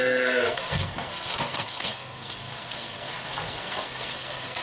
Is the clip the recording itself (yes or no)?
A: no